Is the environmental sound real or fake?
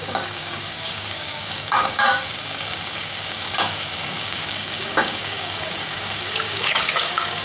fake